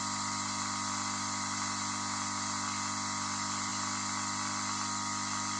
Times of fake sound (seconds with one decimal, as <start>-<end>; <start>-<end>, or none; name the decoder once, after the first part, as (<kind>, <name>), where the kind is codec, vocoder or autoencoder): none